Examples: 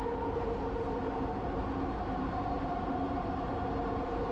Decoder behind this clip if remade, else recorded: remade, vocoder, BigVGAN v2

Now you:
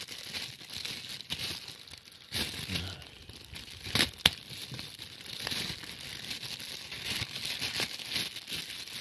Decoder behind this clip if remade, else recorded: recorded